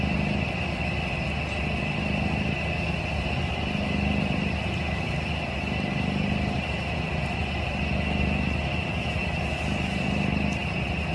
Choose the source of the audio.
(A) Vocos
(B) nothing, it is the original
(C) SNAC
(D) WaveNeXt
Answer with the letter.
B